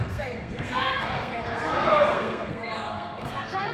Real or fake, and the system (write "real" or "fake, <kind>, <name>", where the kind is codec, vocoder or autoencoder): fake, codec, SNAC